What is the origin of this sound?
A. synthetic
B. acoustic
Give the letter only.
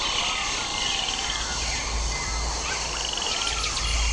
B